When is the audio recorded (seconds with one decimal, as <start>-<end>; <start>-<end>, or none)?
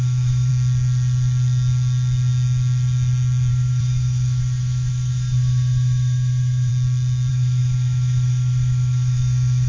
0.5-3.5; 6.7-7.3